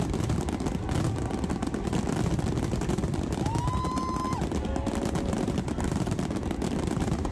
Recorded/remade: recorded